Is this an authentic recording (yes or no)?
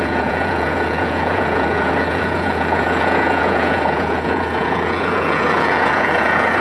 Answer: no